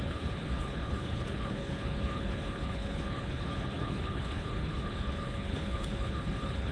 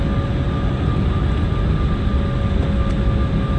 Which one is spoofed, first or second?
first